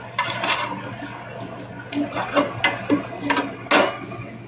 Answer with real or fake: real